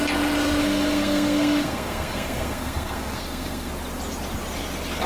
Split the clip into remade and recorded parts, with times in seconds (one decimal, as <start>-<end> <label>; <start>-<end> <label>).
0.0-0.6 recorded; 0.6-3.7 remade; 3.7-5.1 recorded